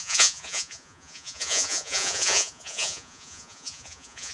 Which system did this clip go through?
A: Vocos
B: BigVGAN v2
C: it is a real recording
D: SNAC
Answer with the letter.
A